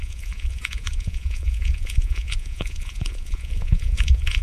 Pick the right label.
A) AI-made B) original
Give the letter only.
A